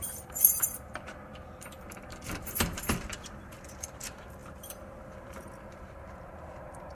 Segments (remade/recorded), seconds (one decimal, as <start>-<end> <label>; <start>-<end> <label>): 0.0-6.9 remade